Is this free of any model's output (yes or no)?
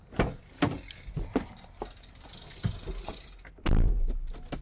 yes